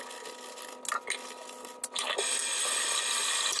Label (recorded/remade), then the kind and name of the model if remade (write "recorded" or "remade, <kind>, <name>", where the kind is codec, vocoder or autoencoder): recorded